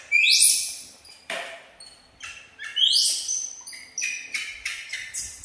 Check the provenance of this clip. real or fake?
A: real